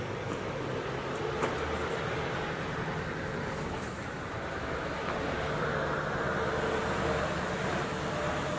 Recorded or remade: recorded